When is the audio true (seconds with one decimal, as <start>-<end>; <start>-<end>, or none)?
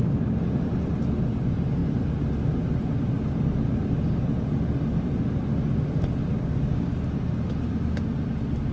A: 0.0-6.3; 6.9-8.7